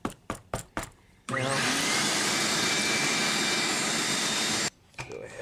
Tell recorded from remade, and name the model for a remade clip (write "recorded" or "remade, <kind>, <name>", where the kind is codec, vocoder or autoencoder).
remade, vocoder, BigVGAN v2